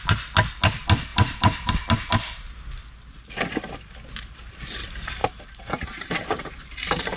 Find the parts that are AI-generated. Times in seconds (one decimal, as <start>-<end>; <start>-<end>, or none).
1.1-1.7; 5.2-7.2